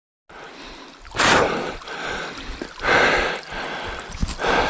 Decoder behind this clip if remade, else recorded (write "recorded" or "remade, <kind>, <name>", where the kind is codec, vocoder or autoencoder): recorded